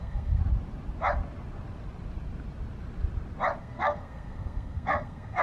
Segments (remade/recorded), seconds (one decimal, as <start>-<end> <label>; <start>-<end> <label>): 0.0-0.4 remade; 0.4-3.6 recorded; 3.6-5.4 remade